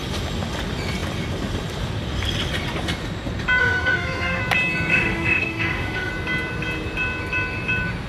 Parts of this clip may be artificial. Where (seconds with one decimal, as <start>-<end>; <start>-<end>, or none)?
3.6-4.4; 4.9-6.1